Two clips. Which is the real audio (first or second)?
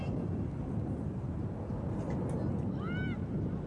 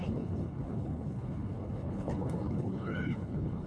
first